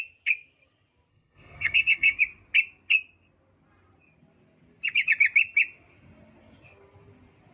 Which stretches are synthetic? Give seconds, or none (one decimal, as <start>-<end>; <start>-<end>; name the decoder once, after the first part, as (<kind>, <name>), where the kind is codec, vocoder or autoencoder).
1.1-2.2 (codec, SNAC)